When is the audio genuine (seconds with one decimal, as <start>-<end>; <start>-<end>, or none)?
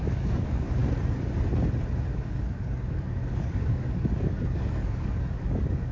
0.8-2.1